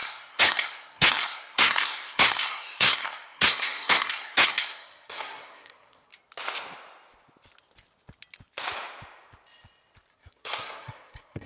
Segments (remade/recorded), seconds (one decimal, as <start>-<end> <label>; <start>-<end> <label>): 0.0-6.1 remade; 6.1-10.1 recorded; 10.1-11.5 remade